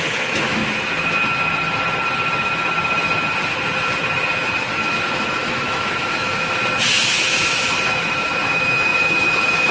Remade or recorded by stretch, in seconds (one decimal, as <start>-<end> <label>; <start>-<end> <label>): 0.0-0.6 remade; 0.6-4.9 recorded; 4.9-9.7 remade